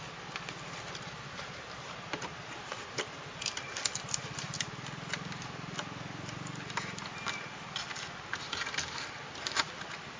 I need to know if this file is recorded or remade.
recorded